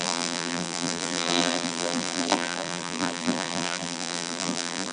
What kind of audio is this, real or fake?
fake